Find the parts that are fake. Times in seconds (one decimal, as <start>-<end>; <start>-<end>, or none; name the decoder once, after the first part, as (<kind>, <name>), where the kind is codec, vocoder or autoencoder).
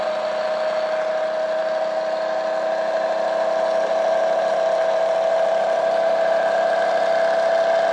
none